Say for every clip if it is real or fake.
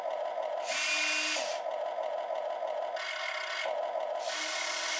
real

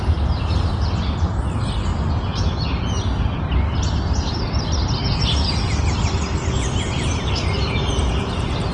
real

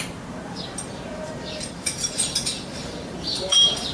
fake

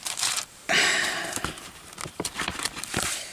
fake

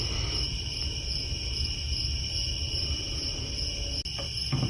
real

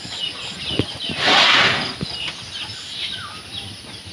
real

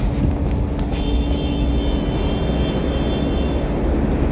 real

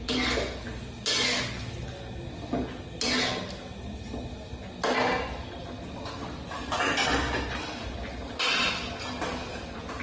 real